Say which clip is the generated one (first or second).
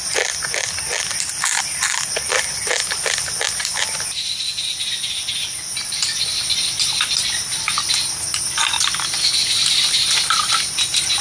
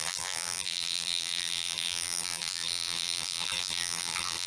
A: second